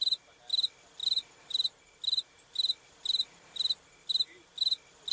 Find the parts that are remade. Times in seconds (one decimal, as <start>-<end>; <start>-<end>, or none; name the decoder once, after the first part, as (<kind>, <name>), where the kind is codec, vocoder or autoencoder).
1.0-4.1 (vocoder, BigVGAN v2)